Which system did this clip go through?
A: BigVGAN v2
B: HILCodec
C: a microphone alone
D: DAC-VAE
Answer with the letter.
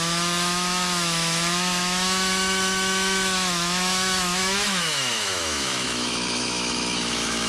D